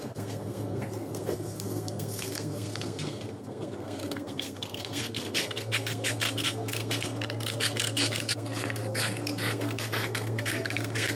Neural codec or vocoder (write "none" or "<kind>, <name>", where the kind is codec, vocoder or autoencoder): codec, SNAC